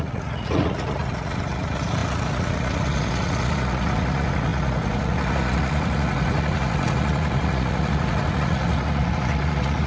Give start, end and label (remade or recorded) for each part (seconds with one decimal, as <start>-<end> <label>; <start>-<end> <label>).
0.0-9.9 remade